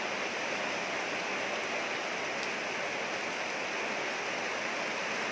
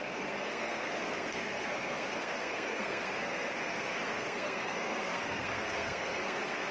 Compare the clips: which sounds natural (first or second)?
first